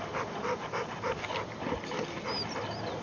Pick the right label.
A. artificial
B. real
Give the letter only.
B